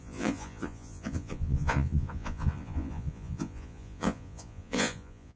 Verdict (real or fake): fake